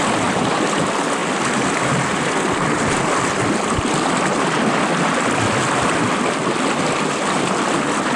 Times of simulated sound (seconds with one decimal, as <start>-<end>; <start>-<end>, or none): none